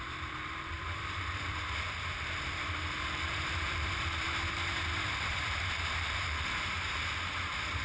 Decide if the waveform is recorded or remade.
remade